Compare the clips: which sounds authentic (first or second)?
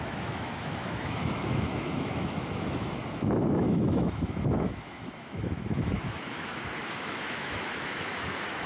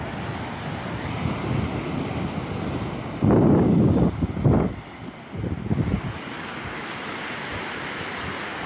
second